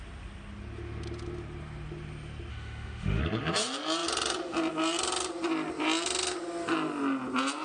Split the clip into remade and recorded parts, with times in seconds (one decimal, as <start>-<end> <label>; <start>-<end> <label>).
0.0-2.5 recorded; 2.5-3.2 remade; 3.2-7.6 recorded